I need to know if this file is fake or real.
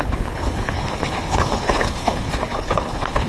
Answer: fake